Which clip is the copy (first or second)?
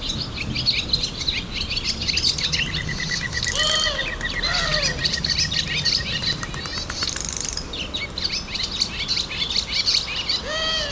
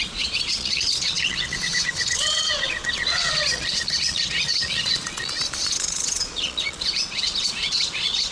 second